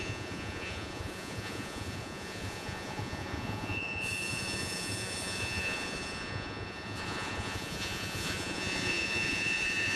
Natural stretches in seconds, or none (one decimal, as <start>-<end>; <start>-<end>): none